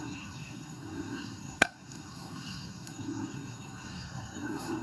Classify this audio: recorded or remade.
remade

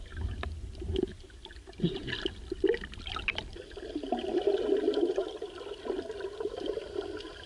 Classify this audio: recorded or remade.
recorded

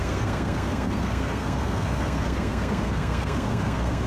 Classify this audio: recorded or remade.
remade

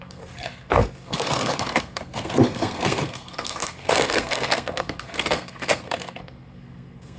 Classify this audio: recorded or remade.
remade